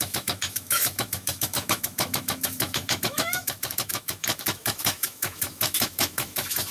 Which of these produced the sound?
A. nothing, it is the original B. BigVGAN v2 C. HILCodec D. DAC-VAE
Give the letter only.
D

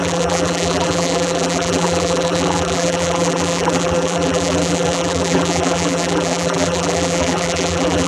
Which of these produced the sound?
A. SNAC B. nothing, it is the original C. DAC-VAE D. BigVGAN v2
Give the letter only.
D